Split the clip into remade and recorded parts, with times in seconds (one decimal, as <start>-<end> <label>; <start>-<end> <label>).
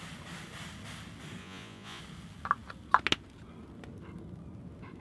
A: 0.0-1.4 recorded; 1.4-2.0 remade; 2.0-5.0 recorded